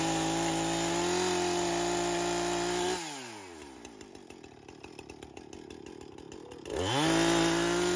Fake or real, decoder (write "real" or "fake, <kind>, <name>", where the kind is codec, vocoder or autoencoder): real